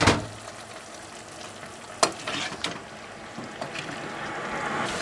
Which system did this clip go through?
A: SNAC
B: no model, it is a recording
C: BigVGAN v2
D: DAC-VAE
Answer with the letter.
B